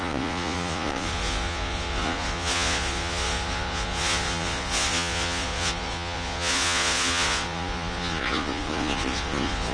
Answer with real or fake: fake